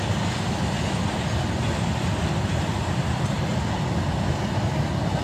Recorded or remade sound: recorded